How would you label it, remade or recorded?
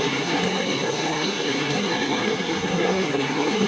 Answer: remade